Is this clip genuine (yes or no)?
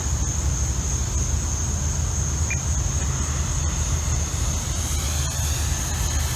yes